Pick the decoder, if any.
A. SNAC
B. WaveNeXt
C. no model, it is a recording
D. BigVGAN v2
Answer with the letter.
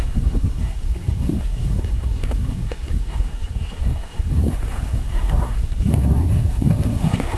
A